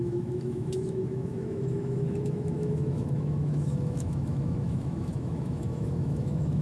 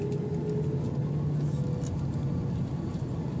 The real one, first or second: second